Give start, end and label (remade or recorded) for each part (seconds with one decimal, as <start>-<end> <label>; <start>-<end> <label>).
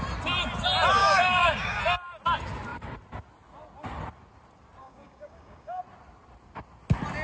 0.0-1.0 recorded; 1.0-1.8 remade; 1.8-4.8 recorded; 4.8-5.8 remade; 5.8-7.2 recorded